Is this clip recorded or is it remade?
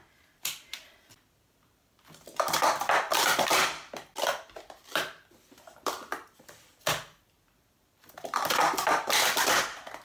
remade